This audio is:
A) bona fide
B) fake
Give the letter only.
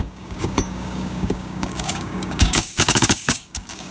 B